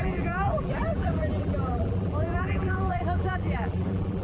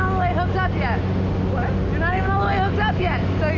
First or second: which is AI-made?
first